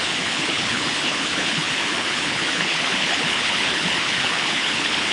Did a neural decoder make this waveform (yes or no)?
yes